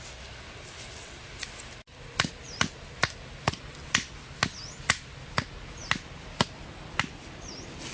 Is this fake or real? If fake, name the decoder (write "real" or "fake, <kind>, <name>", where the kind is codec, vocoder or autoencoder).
real